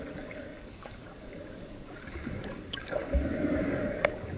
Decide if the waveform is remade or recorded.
remade